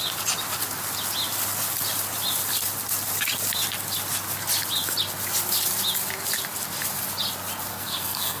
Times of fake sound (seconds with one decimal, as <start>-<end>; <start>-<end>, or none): 7.7-8.4